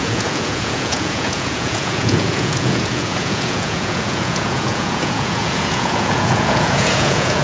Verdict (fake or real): fake